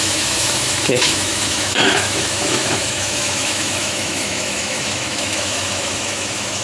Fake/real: fake